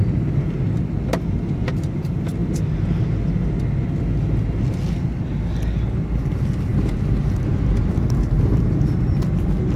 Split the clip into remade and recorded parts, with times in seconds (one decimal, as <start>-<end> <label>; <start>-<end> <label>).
0.0-9.8 recorded